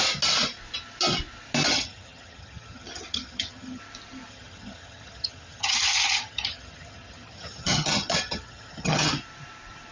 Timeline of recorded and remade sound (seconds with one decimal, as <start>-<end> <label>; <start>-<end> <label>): 0.0-1.7 recorded; 1.7-3.8 remade; 3.8-4.3 recorded; 4.3-9.1 remade; 9.1-9.9 recorded